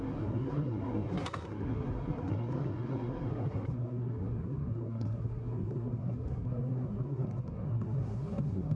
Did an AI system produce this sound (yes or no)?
yes